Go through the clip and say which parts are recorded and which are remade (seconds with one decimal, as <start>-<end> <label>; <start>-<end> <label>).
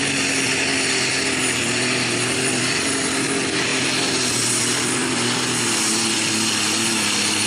0.0-7.5 recorded